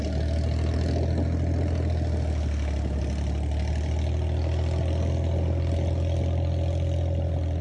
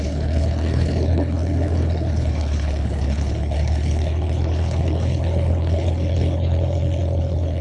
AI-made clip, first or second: second